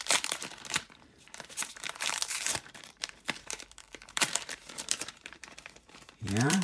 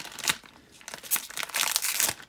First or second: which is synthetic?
first